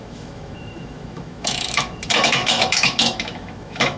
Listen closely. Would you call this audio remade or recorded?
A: remade